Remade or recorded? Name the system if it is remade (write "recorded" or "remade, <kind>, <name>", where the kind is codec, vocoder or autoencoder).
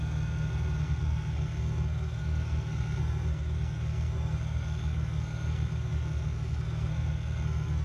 remade, codec, SNAC